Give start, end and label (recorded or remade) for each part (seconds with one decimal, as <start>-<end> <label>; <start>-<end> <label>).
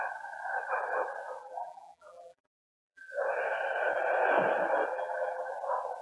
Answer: 0.0-1.4 recorded; 1.4-3.1 remade; 3.1-4.9 recorded; 4.9-5.5 remade; 5.5-6.0 recorded